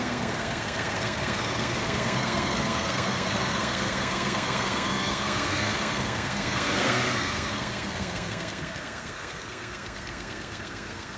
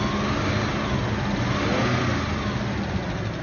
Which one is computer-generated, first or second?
first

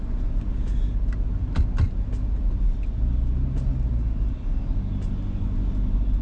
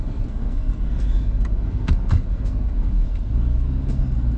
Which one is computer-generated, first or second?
second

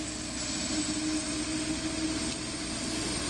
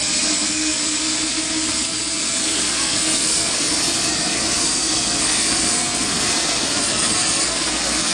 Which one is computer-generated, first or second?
second